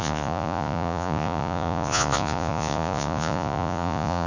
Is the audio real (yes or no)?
no